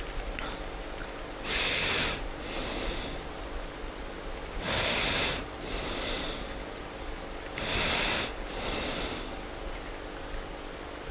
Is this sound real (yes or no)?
yes